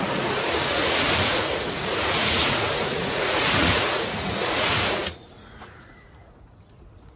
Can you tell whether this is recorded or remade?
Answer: remade